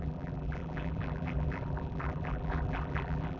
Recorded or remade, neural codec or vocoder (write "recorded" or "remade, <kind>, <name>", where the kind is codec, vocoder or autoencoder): remade, vocoder, BigVGAN v2